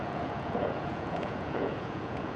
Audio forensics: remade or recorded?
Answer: remade